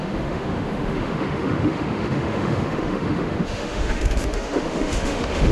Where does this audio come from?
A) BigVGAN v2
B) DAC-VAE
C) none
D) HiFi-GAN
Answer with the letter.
B